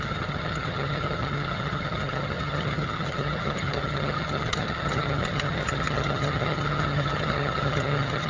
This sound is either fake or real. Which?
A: fake